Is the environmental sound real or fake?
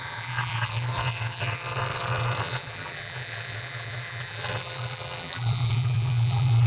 fake